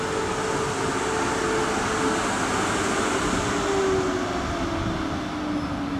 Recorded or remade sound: recorded